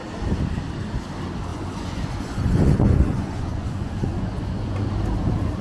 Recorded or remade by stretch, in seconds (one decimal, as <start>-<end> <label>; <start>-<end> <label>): 0.0-1.5 recorded; 1.5-4.9 remade; 4.9-5.6 recorded